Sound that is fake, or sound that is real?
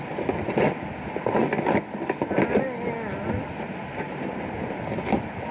real